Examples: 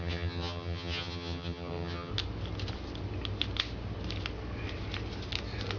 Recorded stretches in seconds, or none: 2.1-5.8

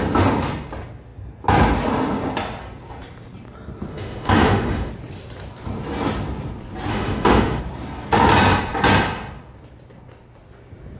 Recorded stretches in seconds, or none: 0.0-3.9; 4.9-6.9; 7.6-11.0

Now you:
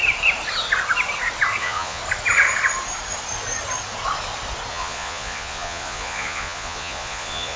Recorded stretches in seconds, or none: 0.0-1.6; 2.0-4.7

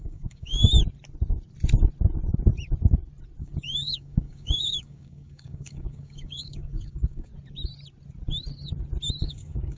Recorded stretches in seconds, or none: 0.6-3.4; 7.3-9.2

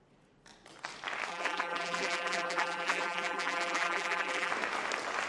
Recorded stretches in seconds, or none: 0.0-1.3; 4.5-5.3